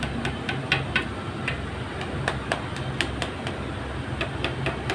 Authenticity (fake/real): real